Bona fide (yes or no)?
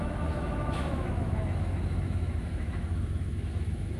no